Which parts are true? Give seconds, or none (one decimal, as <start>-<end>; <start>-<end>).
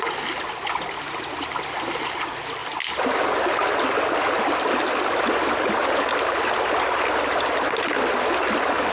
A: 0.0-8.9